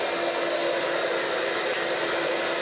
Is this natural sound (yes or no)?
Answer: yes